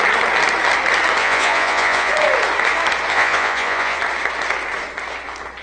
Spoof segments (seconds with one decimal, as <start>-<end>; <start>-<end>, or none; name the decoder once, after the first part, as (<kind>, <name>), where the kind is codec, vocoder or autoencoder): 1.2-2.1 (vocoder, Vocos); 3.1-4.0

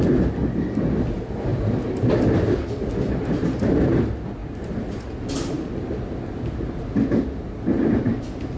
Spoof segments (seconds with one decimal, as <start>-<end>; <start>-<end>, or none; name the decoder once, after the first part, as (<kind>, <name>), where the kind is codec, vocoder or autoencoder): 1.5-3.1 (vocoder, BigVGAN v2)

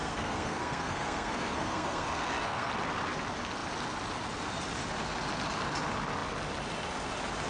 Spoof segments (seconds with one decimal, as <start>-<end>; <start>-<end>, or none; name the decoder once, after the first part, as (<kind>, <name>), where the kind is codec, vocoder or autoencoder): 0.0-2.7 (codec, SNAC)

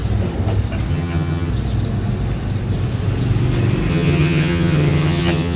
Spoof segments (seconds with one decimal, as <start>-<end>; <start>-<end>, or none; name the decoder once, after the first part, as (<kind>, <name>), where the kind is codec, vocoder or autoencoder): 0.9-1.5 (vocoder, HiFi-GAN); 3.9-5.6

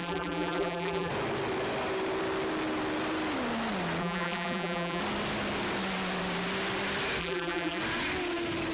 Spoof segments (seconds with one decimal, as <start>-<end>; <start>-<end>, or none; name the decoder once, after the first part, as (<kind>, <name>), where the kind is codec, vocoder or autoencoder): 0.0-1.1 (vocoder, BigVGAN v2); 4.0-5.0; 7.2-7.8

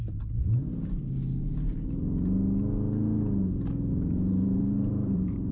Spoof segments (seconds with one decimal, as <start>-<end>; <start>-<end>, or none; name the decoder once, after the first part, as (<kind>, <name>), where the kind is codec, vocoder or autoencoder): 0.0-0.6 (vocoder, BigVGAN v2); 3.9-5.5

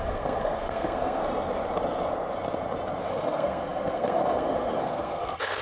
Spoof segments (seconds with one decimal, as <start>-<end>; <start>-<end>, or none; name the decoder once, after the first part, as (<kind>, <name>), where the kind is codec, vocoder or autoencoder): 0.0-1.2 (codec, SNAC); 3.1-5.6